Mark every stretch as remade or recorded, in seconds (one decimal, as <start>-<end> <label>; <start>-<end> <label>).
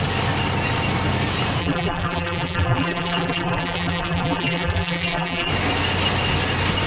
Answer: 0.0-1.6 recorded; 1.6-5.5 remade; 5.5-6.9 recorded